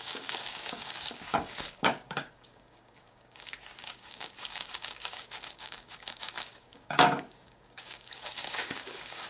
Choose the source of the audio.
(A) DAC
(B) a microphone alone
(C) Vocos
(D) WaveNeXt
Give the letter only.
A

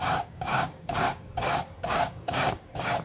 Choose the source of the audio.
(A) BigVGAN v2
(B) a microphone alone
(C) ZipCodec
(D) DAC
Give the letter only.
D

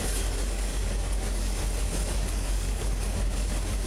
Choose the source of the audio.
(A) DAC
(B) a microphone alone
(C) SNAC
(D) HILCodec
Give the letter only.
A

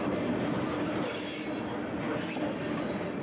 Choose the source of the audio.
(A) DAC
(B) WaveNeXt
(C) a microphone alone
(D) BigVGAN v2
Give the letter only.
C